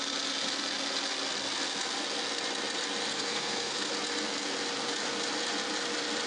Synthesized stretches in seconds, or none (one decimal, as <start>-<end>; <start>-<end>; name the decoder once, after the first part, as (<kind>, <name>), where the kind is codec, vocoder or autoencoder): 3.1-3.9 (codec, SNAC)